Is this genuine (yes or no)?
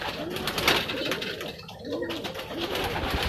yes